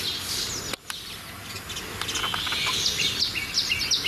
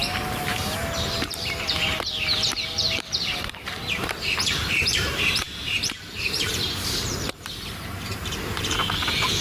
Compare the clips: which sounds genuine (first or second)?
first